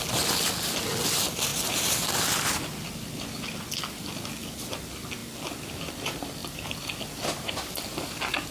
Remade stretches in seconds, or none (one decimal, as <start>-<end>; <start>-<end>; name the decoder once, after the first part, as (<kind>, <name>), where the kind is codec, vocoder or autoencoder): none